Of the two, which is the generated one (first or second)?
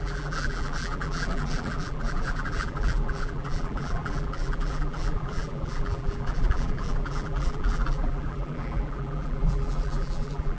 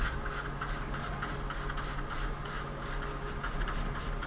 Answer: first